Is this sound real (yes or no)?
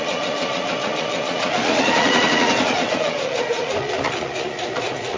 no